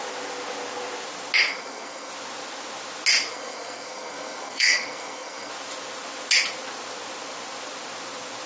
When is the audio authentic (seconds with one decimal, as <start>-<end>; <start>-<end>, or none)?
0.0-1.5; 2.1-3.3; 5.5-8.5